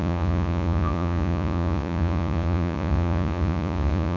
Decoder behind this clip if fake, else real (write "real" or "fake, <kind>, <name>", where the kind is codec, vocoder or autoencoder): fake, vocoder, Vocos